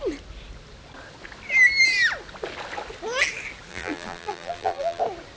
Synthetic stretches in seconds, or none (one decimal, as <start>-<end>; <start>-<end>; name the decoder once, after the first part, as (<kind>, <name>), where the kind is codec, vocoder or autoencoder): 3.7-5.0 (vocoder, BigVGAN v2)